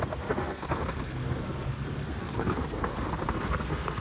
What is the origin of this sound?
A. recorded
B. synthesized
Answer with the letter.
B